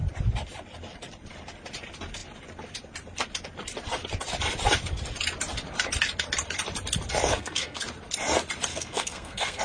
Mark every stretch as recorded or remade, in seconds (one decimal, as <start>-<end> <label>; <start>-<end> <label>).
0.0-7.3 recorded; 7.3-7.8 remade; 7.8-8.7 recorded; 8.7-9.6 remade

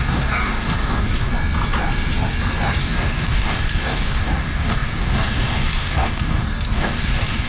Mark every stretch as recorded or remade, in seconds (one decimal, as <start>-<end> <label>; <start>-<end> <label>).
0.0-1.3 remade; 1.3-2.8 recorded; 2.8-7.5 remade

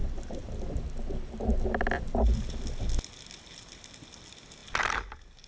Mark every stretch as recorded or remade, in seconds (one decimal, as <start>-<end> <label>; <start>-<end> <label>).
0.0-5.5 recorded

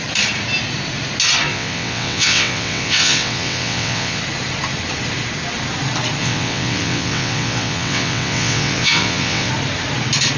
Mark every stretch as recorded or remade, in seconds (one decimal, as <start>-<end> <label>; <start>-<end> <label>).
0.0-1.5 recorded; 1.5-4.2 remade; 4.2-6.2 recorded; 6.2-9.5 remade; 9.5-10.4 recorded

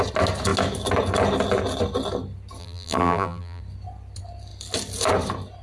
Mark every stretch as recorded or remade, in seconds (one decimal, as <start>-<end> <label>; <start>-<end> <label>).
0.0-2.6 recorded; 2.6-3.6 remade; 3.6-5.6 recorded

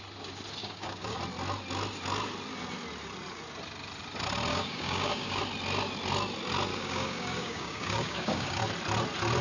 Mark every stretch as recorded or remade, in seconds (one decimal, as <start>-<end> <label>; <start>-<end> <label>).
0.0-0.6 recorded; 0.6-1.2 remade; 1.2-4.5 recorded; 4.5-5.4 remade; 5.4-6.7 recorded; 6.7-8.6 remade; 8.6-9.4 recorded

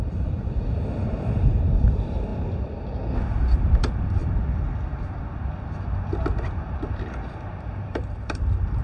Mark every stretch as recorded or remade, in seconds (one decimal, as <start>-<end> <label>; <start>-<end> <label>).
0.0-2.3 remade; 2.3-3.4 recorded; 3.4-4.2 remade; 4.2-7.9 recorded; 7.9-8.8 remade

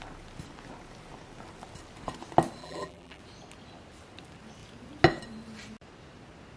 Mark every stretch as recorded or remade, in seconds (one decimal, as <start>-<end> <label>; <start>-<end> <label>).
0.0-2.6 recorded; 2.6-3.2 remade; 3.2-6.6 recorded